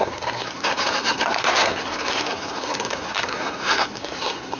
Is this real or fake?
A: fake